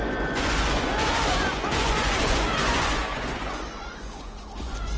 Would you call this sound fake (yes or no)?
yes